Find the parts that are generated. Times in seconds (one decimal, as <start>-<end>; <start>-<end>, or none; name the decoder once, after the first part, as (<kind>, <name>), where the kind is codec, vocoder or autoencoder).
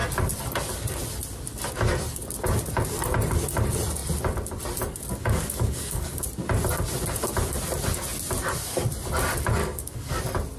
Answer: 5.2-6.2 (codec, DAC); 9.6-10.2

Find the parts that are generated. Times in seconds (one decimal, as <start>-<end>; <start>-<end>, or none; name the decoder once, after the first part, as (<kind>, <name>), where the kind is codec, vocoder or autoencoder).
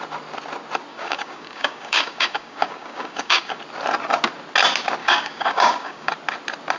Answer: 0.9-3.6 (codec, DAC); 5.0-6.1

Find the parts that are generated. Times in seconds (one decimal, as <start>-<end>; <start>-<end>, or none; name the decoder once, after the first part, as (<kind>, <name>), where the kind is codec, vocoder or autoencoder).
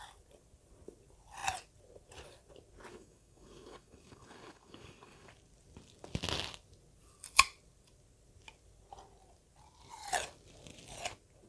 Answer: 2.9-5.3 (codec, DAC)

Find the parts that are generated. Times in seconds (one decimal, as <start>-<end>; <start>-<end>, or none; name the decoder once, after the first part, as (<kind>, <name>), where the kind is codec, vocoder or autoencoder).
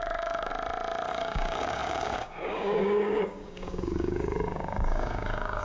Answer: 0.0-0.5 (codec, DAC); 1.1-5.6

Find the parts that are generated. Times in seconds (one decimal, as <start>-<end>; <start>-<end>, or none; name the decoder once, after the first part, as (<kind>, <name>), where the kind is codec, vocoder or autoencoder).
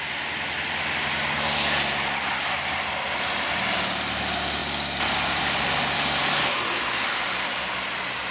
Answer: none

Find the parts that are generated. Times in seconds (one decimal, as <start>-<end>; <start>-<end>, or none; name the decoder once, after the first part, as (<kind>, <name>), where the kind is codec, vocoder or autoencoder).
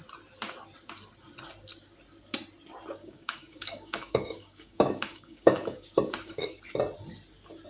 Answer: 3.0-6.6 (codec, DAC)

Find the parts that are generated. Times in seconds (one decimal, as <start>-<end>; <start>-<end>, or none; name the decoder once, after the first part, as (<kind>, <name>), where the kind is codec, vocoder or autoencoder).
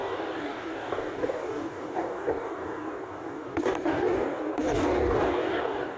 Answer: 0.0-6.0 (codec, DAC)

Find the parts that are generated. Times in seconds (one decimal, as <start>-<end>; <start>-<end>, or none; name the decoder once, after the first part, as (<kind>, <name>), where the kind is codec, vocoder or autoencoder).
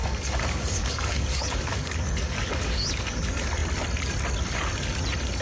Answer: 0.0-3.2 (codec, DAC)